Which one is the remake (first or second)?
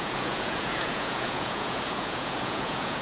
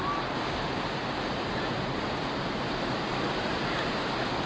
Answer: first